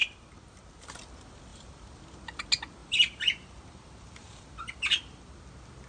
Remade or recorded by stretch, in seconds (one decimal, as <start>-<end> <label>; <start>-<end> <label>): 0.0-1.5 recorded; 1.5-2.0 remade; 2.0-2.8 recorded; 2.8-5.2 remade; 5.2-5.9 recorded